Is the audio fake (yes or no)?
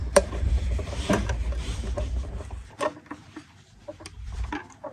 yes